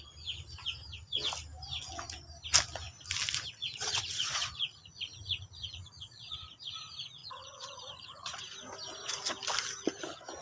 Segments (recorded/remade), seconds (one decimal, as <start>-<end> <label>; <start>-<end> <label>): 0.0-3.6 recorded; 3.6-6.7 remade; 6.7-7.2 recorded; 7.2-8.4 remade; 8.4-10.4 recorded